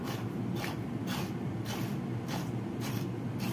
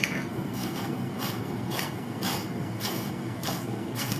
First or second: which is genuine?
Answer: first